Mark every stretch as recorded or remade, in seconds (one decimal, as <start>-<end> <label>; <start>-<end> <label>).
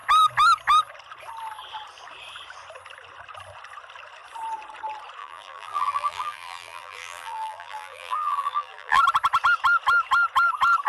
0.0-5.2 recorded; 5.2-9.0 remade; 9.0-10.9 recorded